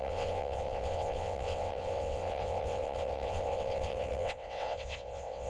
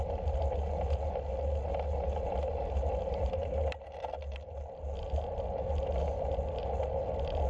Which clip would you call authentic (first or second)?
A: second